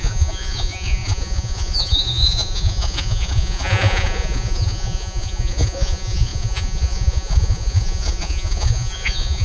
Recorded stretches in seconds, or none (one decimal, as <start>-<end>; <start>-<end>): none